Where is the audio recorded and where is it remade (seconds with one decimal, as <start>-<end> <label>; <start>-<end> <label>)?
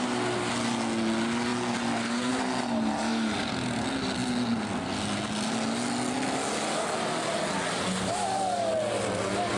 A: 0.0-9.6 recorded